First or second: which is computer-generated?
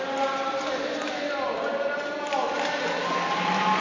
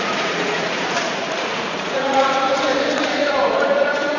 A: second